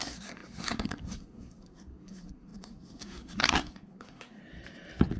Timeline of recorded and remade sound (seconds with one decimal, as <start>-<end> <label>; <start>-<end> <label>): 0.0-4.4 remade; 4.4-5.2 recorded